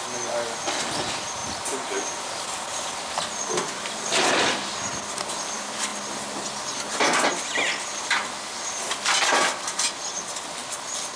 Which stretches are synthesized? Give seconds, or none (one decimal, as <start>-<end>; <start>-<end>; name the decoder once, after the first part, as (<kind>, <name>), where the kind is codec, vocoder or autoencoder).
10.6-11.2 (vocoder, BigVGAN v2)